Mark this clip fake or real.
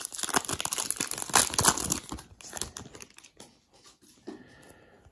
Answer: real